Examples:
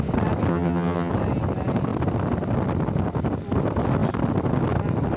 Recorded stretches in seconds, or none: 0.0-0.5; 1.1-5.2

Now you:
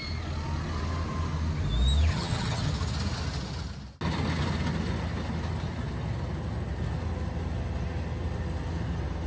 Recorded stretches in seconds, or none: 0.0-2.1; 2.7-9.3

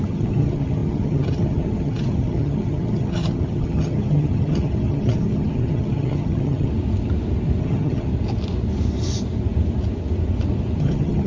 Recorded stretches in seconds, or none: 6.7-7.6; 8.1-10.8

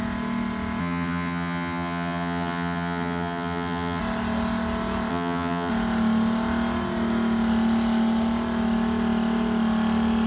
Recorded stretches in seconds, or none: 0.0-0.8; 4.0-5.1; 5.7-10.3